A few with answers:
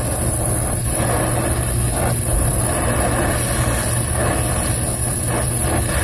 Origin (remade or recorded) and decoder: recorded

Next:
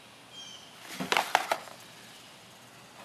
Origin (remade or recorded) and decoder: recorded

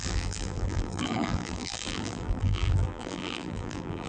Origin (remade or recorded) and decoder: remade, vocoder, BigVGAN v2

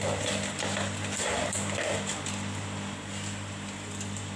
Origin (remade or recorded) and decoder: remade, vocoder, BigVGAN v2